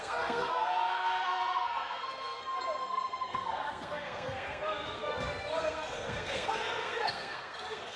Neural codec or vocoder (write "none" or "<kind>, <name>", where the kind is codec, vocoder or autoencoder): codec, SNAC